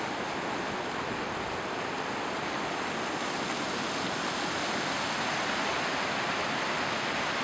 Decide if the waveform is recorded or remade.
recorded